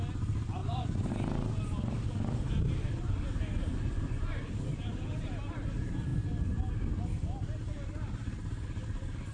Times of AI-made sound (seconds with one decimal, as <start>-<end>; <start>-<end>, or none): 0.6-1.1; 3.7-4.5